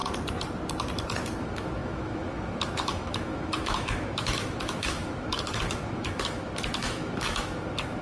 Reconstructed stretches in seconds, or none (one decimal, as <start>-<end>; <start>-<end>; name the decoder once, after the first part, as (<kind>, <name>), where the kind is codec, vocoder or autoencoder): 1.4-8.0 (autoencoder, DAC-VAE)